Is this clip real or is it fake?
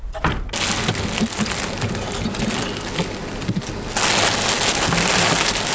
real